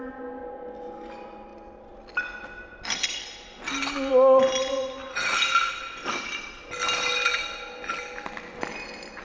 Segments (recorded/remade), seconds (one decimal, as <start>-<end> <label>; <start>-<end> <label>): 0.0-9.2 recorded